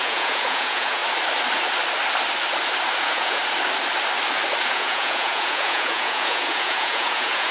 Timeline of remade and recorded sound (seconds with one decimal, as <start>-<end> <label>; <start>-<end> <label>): 0.0-1.0 remade; 1.0-3.0 recorded; 3.0-3.4 remade; 3.4-4.6 recorded; 4.6-7.5 remade